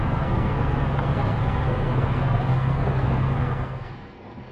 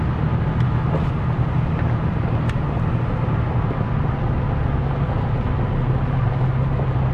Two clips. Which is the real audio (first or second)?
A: second